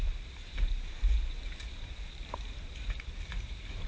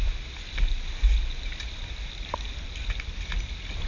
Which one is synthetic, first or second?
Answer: first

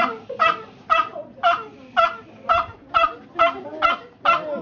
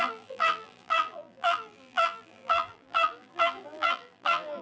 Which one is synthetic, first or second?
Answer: second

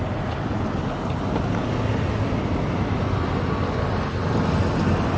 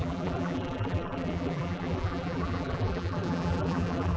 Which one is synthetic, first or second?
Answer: second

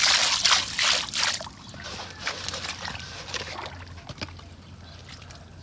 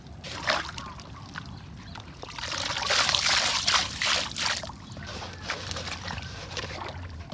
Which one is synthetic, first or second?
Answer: second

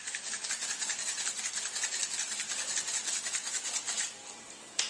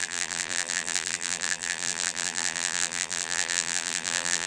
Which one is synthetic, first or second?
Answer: second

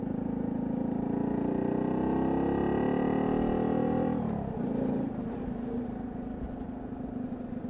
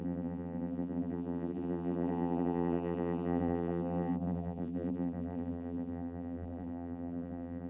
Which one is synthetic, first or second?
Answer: second